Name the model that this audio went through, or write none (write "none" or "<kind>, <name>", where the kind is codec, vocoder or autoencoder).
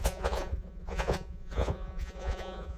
vocoder, Vocos